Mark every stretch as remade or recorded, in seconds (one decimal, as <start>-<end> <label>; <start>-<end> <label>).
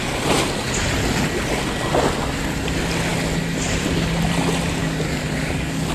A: 0.0-4.8 recorded; 4.8-5.9 remade